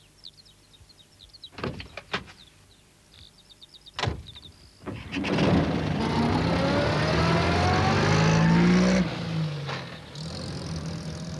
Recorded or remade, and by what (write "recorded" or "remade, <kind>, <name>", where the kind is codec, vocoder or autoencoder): recorded